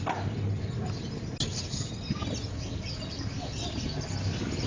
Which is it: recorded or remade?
recorded